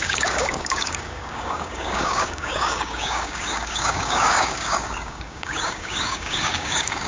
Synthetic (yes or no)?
yes